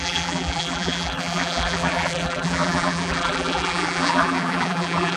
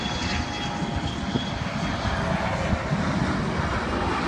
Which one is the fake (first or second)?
first